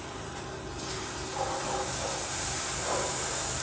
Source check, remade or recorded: recorded